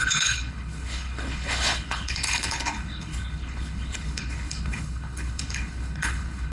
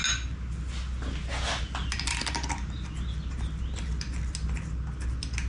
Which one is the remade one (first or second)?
first